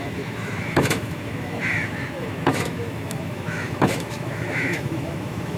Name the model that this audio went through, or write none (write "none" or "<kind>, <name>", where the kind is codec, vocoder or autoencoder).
autoencoder, DAC-VAE